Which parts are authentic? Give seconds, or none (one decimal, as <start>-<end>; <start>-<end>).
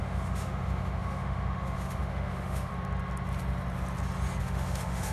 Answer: 2.7-4.4